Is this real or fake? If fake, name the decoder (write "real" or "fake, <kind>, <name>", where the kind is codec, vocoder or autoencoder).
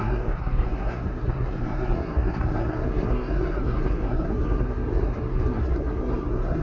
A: fake, codec, SNAC